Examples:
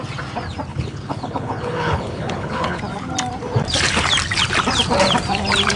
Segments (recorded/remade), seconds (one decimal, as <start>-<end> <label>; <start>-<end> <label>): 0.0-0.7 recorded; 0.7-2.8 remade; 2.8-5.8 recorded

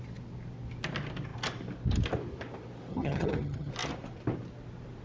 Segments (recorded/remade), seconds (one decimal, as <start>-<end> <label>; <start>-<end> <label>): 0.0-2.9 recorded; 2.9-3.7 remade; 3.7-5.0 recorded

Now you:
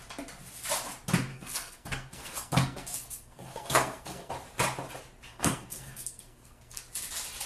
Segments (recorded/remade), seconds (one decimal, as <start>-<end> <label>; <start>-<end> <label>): 0.0-1.3 recorded; 1.3-4.3 remade; 4.3-5.3 recorded; 5.3-6.8 remade; 6.8-7.5 recorded